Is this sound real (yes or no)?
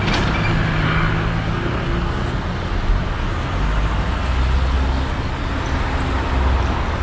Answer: yes